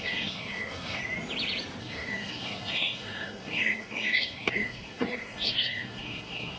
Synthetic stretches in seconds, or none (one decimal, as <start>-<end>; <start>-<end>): 0.0-1.0; 1.8-6.6